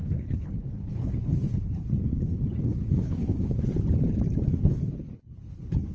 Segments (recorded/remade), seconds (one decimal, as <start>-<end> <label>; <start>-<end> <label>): 0.0-3.7 remade; 3.7-4.5 recorded; 4.5-5.9 remade